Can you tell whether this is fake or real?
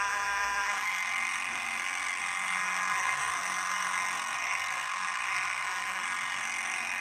fake